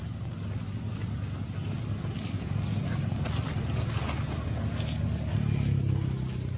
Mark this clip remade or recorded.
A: recorded